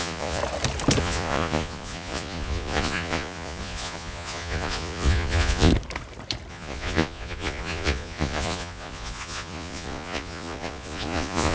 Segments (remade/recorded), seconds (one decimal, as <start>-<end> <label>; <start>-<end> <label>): 0.0-0.4 remade; 0.4-1.0 recorded; 1.0-5.7 remade; 5.7-6.5 recorded; 6.5-11.5 remade